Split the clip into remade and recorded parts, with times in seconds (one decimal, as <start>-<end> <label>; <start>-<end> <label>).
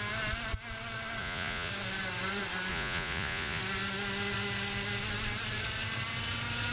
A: 0.0-1.2 recorded; 1.2-1.7 remade; 1.7-2.7 recorded; 2.7-3.6 remade; 3.6-6.7 recorded